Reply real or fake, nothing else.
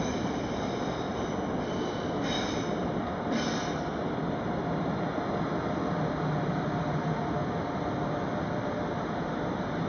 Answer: real